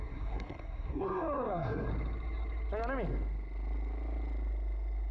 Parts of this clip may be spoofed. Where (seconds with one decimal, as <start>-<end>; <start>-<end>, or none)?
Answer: 0.0-1.9